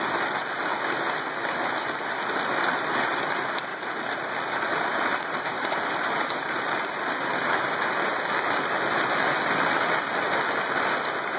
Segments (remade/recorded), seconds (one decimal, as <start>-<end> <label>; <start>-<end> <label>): 0.0-3.7 recorded; 3.7-4.3 remade; 4.3-5.1 recorded; 5.1-7.1 remade; 7.1-11.4 recorded